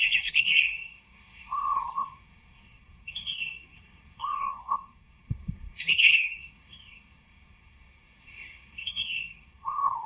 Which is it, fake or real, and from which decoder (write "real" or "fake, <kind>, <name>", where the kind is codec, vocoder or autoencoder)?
fake, codec, SNAC